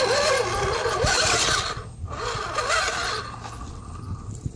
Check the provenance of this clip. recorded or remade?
recorded